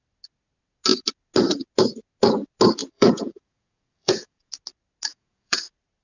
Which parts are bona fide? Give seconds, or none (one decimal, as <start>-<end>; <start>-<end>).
0.0-2.8; 4.5-5.1; 5.6-6.0